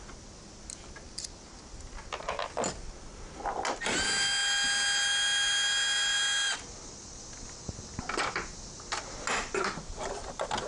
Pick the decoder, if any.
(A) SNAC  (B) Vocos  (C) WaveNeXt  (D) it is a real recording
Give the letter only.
D